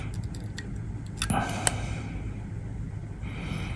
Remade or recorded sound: recorded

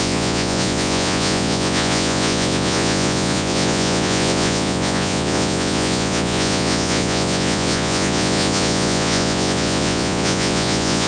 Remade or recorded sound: remade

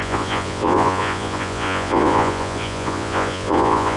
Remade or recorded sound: remade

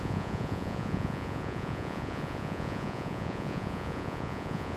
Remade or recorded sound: remade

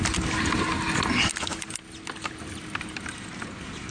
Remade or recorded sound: recorded